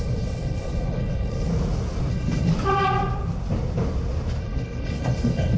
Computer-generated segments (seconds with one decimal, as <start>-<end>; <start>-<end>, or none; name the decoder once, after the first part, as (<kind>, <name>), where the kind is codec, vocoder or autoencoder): 0.0-1.5 (codec, HILCodec); 2.1-2.5; 4.4-5.6